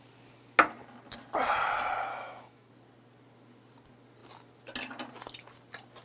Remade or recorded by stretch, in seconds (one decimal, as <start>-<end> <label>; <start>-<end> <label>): 0.0-2.1 recorded; 2.1-2.7 remade; 2.7-6.0 recorded